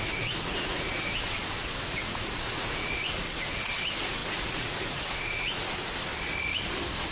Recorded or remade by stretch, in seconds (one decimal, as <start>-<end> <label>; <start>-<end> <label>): 0.0-6.1 remade; 6.1-7.1 recorded